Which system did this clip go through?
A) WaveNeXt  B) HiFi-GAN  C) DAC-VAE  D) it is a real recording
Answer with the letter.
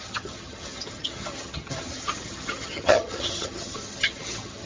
B